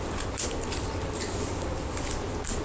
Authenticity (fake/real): real